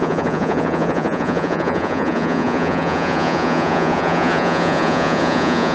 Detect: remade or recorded remade